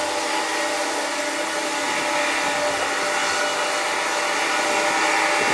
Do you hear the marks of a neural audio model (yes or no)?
no